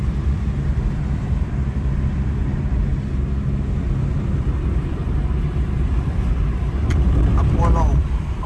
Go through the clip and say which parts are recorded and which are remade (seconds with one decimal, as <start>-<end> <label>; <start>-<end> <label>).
0.0-2.9 remade; 2.9-3.7 recorded; 3.7-8.5 remade